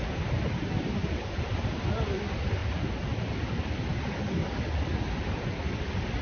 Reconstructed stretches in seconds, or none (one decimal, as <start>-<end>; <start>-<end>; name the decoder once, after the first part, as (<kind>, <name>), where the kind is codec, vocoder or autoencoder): none